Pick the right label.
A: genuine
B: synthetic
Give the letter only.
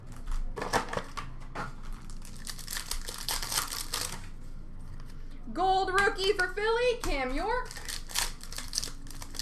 A